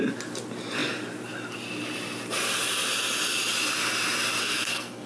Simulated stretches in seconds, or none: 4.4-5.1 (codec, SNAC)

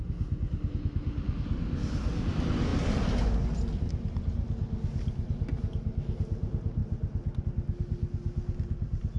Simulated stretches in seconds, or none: none

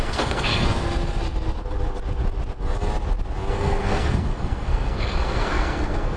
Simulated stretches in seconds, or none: 0.0-0.5 (codec, SNAC); 3.5-6.2

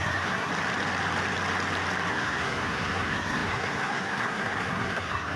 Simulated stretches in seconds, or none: 0.0-0.5 (codec, SNAC); 2.1-5.4

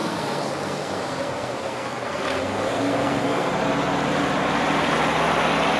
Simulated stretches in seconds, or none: 0.0-3.5 (codec, SNAC)

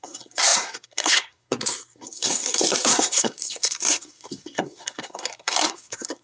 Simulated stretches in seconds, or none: 0.0-6.2 (codec, SNAC)

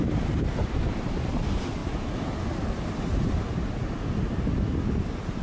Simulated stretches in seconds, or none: none